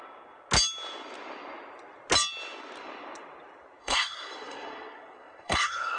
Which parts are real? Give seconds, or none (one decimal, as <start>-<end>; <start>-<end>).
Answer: 0.0-3.8